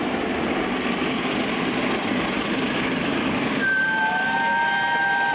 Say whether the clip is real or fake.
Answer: real